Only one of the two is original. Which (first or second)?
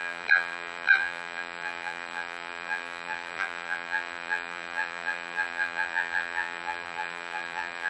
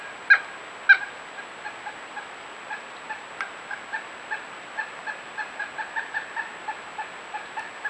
second